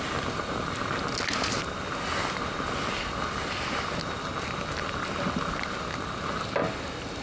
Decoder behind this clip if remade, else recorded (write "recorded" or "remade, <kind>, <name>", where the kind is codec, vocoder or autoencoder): recorded